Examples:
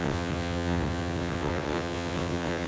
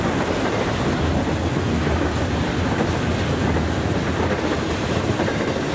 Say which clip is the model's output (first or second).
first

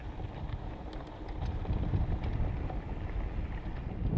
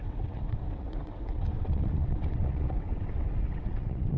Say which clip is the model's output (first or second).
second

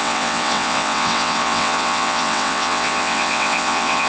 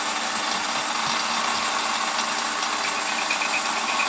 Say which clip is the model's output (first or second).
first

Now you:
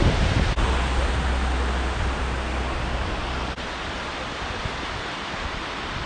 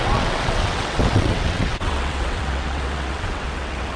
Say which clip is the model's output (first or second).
second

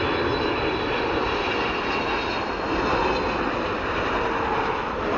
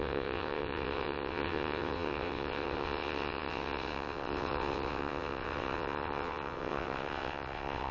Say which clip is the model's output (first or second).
second